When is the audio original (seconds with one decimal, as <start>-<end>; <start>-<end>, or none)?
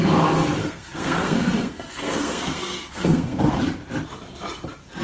0.0-0.6; 3.6-5.0